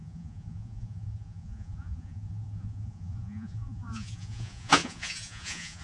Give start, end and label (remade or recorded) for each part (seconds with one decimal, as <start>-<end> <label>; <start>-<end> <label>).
0.0-5.8 remade